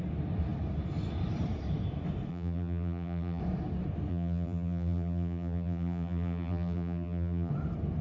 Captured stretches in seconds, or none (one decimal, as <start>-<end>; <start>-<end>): 0.0-2.3; 3.4-4.1; 7.5-8.0